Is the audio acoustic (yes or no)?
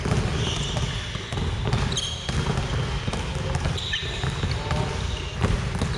yes